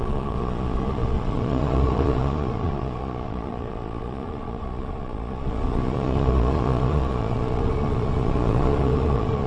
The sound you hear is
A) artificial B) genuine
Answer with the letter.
A